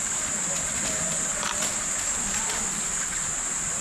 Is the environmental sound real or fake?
real